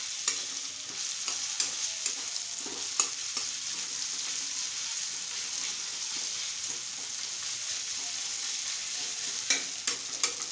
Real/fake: real